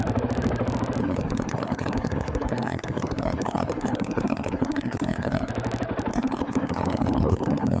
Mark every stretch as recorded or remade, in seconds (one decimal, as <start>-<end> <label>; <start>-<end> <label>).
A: 0.0-1.0 recorded; 1.0-5.5 remade; 5.5-6.1 recorded; 6.1-7.8 remade